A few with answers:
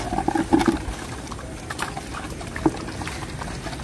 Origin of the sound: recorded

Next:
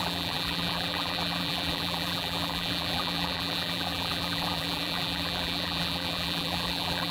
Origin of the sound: remade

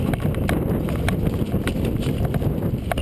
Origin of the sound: recorded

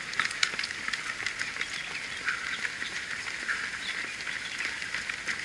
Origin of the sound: recorded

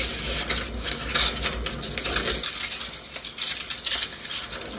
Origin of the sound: recorded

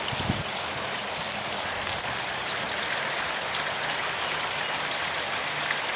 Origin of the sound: recorded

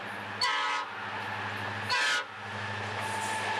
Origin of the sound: recorded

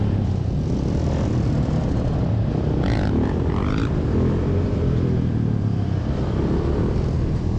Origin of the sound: remade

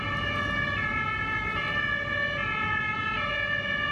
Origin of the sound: recorded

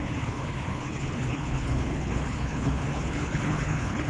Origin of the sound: remade